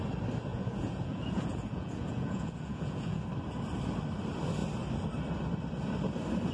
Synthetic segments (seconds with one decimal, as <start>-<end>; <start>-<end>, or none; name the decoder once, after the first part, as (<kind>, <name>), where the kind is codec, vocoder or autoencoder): 0.5-3.2 (vocoder, Vocos)